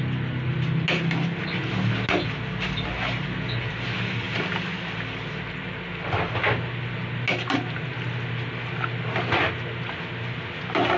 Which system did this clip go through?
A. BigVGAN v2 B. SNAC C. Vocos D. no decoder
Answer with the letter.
D